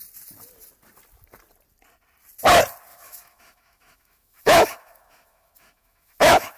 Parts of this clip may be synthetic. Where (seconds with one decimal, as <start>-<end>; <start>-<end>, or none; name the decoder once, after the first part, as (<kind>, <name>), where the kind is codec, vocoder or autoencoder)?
2.9-6.6 (autoencoder, DAC-VAE)